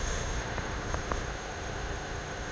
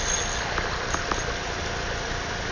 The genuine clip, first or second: second